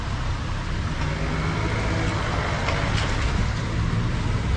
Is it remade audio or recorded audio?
recorded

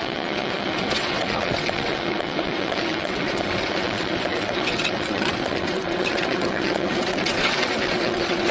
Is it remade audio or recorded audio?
remade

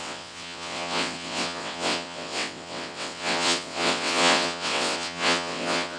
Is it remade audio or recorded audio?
remade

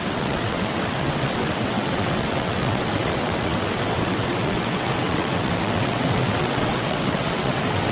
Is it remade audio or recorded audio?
remade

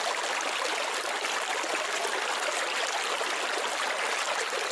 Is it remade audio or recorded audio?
recorded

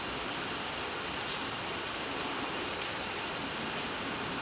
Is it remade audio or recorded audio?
recorded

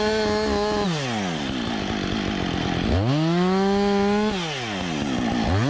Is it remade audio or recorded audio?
recorded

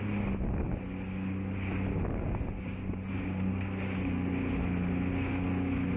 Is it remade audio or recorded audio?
recorded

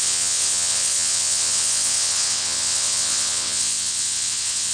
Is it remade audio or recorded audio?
remade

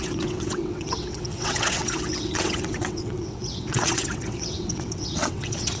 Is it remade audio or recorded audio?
remade